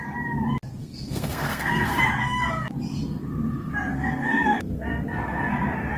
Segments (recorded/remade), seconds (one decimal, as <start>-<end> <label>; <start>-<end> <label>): 0.0-0.8 recorded; 0.8-2.0 remade; 2.0-3.9 recorded; 3.9-5.6 remade; 5.6-6.0 recorded